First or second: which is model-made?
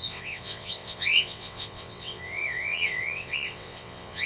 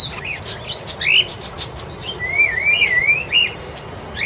first